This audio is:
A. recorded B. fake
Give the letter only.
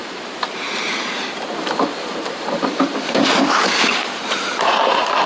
B